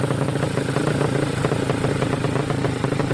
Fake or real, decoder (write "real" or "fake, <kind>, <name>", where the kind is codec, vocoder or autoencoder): real